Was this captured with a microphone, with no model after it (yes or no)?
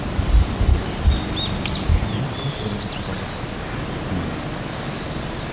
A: yes